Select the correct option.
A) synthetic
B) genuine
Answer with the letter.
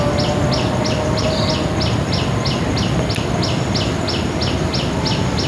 B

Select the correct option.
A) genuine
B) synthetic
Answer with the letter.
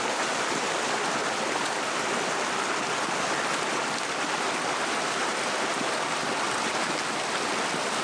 A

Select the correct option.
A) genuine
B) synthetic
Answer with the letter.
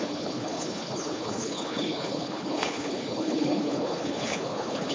B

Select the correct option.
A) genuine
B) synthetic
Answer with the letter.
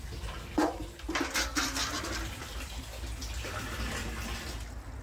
A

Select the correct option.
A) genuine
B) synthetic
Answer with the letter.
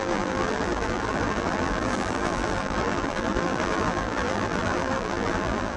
B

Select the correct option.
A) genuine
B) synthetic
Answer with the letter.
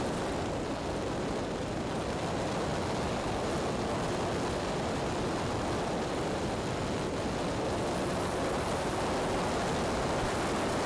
A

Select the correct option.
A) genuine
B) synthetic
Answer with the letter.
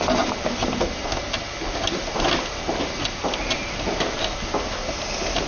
A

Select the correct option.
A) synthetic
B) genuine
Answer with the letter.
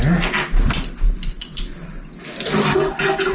B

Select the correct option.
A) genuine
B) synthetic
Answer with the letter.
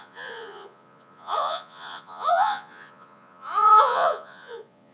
B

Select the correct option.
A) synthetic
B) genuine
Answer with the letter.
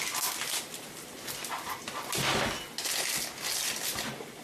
B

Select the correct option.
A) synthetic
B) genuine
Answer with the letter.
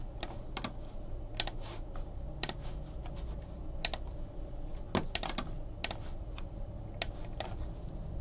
B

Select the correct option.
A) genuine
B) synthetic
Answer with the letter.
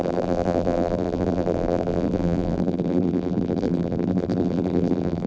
B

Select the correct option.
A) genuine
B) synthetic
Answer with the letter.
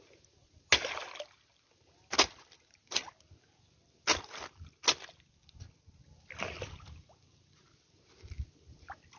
A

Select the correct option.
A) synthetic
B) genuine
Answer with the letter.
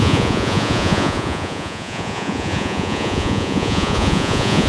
A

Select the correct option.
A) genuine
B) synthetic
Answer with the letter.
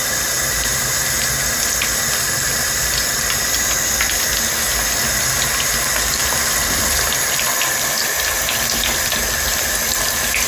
A